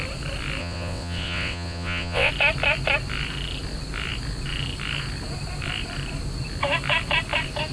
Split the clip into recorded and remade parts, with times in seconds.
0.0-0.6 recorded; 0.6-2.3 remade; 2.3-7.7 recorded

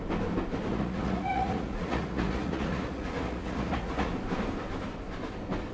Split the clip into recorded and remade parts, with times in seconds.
0.0-0.7 recorded; 0.7-4.1 remade; 4.1-5.7 recorded

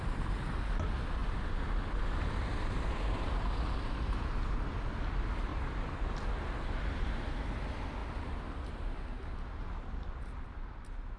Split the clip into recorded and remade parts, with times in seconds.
0.0-11.2 recorded

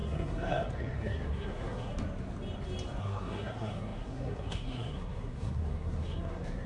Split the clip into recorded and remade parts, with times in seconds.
0.0-1.9 remade; 1.9-3.0 recorded; 3.0-6.7 remade

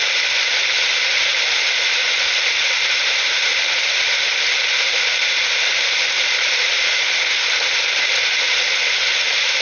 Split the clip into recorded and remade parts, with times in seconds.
0.0-1.3 recorded; 1.3-2.0 remade; 2.0-3.5 recorded; 3.5-4.0 remade; 4.0-9.6 recorded

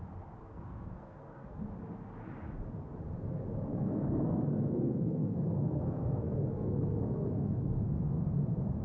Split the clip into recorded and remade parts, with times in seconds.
0.0-0.4 recorded; 0.4-1.6 remade; 1.6-3.7 recorded; 3.7-8.1 remade; 8.1-8.8 recorded